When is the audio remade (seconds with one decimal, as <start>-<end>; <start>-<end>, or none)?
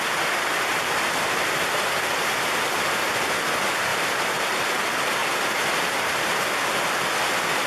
3.9-4.7